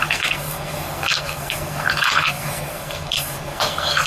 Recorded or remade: remade